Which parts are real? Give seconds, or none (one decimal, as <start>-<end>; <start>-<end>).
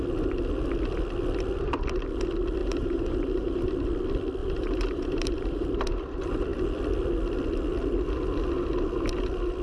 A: 0.0-2.6; 3.7-4.4; 5.8-9.6